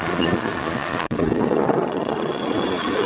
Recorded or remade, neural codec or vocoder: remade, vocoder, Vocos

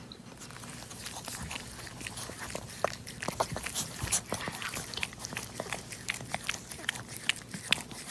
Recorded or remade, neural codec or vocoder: recorded